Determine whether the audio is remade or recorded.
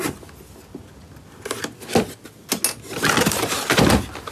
recorded